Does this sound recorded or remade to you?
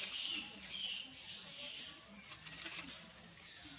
recorded